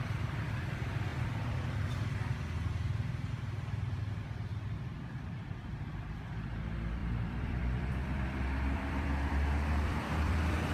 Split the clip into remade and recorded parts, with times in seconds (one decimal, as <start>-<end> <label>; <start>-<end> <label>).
0.0-10.7 remade